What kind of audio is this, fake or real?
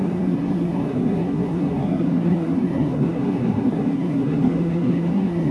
fake